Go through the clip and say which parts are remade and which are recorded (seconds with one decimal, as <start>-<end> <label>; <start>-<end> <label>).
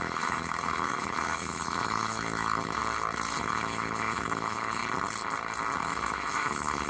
0.0-2.8 remade; 2.8-3.4 recorded; 3.4-4.8 remade; 4.8-5.8 recorded; 5.8-6.9 remade